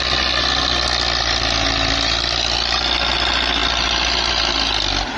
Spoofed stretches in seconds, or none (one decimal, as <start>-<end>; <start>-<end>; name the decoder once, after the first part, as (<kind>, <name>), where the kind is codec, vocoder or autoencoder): none